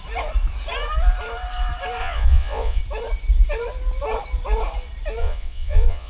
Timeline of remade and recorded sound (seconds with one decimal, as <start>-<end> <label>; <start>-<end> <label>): 0.0-2.0 recorded; 2.0-2.8 remade; 2.8-5.2 recorded; 5.2-6.1 remade